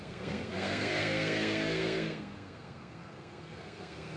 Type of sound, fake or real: fake